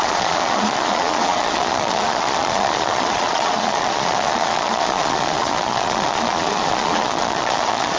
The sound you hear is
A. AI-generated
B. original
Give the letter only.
A